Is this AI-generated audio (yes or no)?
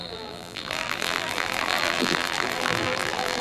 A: yes